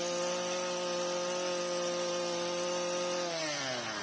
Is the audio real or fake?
fake